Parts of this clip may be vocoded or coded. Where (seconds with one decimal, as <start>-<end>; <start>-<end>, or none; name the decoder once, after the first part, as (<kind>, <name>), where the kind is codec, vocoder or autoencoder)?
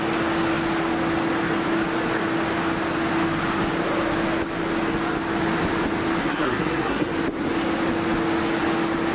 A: 6.2-7.1 (codec, SNAC)